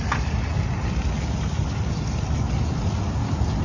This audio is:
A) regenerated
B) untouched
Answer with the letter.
B